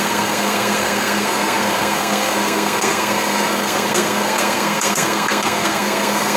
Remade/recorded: remade